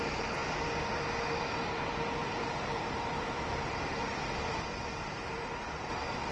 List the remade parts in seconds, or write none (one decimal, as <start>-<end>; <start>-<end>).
2.2-4.1; 4.5-6.3